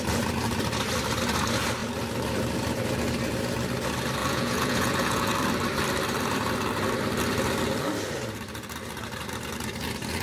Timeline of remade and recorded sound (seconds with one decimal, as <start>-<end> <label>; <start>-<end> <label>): 0.0-4.2 recorded; 4.2-5.3 remade; 5.3-10.2 recorded